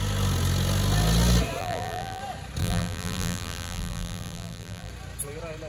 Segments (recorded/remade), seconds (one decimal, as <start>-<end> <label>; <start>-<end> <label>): 0.0-1.6 recorded; 1.6-2.2 remade; 2.2-2.6 recorded; 2.6-4.9 remade; 4.9-5.7 recorded